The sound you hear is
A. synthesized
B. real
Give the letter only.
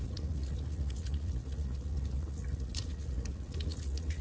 A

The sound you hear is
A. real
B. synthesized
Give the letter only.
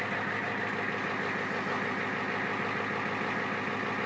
A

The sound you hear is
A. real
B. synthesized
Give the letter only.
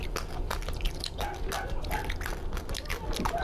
A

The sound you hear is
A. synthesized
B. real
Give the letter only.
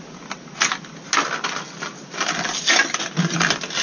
B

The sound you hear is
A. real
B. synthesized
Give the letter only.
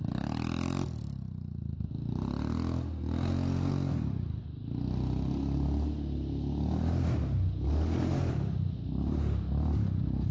A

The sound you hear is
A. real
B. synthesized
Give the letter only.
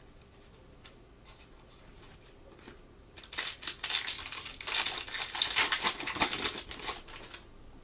A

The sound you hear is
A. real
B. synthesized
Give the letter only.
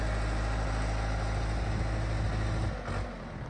A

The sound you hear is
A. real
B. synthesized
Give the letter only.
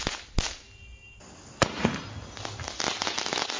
A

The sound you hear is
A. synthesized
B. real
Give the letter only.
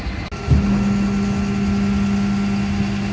B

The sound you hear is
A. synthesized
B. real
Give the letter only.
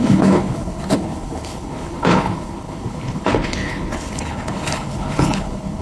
A